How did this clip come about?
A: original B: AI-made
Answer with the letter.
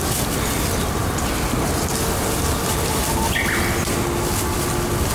A